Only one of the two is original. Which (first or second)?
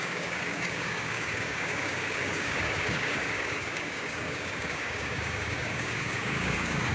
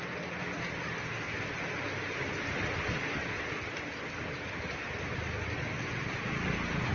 second